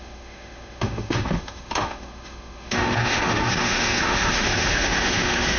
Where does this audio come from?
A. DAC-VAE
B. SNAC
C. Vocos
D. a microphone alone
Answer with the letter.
A